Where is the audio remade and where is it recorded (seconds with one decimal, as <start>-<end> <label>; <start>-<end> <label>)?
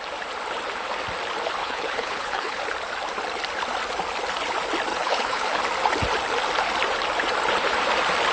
0.0-1.6 recorded; 1.6-2.6 remade; 2.6-4.9 recorded; 4.9-5.6 remade; 5.6-8.3 recorded